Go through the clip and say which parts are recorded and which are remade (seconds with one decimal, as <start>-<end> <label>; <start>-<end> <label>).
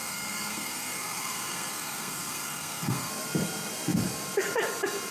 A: 0.0-3.1 remade; 3.1-5.1 recorded